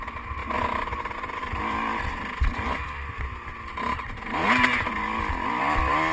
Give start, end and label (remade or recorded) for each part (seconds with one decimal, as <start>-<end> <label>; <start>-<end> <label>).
0.0-6.1 recorded